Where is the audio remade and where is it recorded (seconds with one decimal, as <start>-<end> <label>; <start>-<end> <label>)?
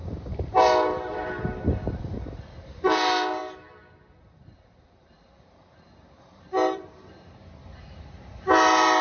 0.0-3.4 remade; 3.4-4.2 recorded; 4.2-9.0 remade